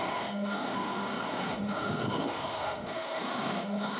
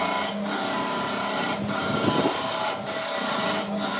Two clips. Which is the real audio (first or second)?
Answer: second